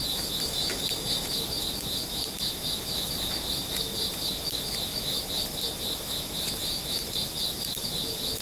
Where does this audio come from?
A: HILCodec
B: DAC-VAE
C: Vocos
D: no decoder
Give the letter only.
B